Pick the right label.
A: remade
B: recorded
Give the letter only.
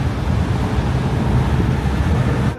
B